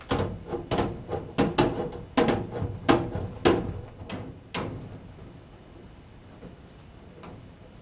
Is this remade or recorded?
recorded